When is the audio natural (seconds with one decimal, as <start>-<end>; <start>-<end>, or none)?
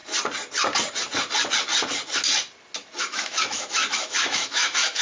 0.0-3.0